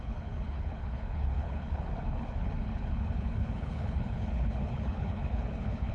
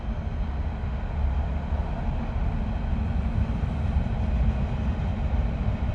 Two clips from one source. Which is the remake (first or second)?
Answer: first